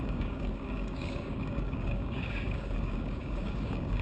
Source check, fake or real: fake